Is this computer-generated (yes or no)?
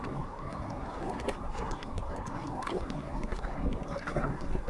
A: yes